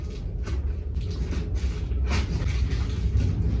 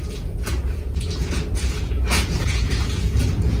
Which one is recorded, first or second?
first